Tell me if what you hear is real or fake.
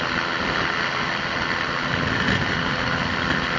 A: real